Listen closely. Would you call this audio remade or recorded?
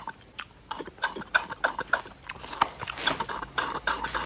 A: recorded